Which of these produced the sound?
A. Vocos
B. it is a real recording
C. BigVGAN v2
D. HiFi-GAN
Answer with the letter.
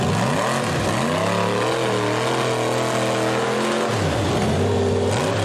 B